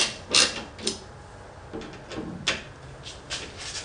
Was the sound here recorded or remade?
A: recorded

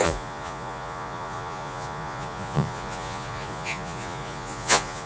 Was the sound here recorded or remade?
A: remade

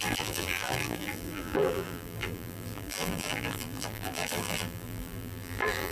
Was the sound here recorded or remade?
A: remade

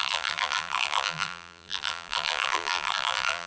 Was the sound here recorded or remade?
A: remade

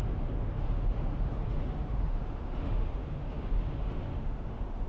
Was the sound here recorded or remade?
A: remade